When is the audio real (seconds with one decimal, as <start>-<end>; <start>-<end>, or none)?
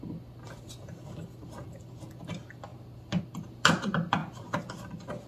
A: 0.0-5.3